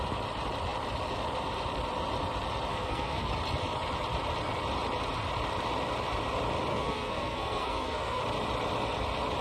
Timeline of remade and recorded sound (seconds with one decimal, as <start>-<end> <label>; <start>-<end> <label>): 0.0-2.7 recorded; 2.7-3.3 remade; 3.3-6.7 recorded; 6.7-8.2 remade; 8.2-9.4 recorded